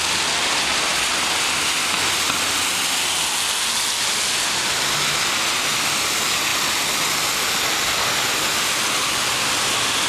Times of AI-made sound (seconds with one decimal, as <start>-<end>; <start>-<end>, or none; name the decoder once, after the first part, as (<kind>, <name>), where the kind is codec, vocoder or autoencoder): none